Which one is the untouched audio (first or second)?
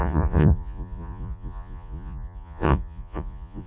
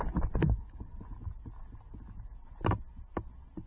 second